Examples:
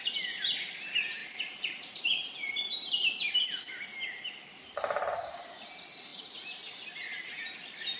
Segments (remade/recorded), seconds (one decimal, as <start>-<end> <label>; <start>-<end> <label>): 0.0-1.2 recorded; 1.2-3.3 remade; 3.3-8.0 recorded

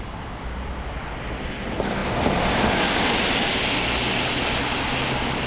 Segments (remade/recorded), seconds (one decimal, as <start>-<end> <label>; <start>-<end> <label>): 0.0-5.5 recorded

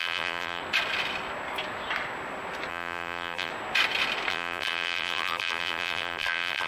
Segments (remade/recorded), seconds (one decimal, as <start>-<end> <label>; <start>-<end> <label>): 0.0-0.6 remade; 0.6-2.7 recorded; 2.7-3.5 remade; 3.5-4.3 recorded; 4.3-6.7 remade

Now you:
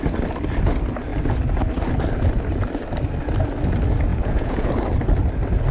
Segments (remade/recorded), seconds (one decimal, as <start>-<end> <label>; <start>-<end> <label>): 0.0-4.1 recorded; 4.1-4.7 remade; 4.7-5.7 recorded